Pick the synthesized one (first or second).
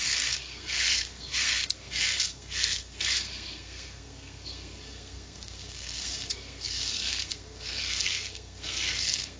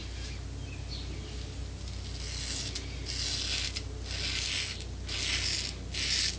first